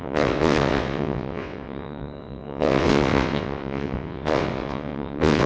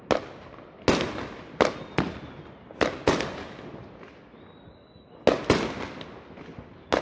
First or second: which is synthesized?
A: first